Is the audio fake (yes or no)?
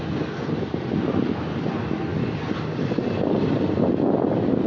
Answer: no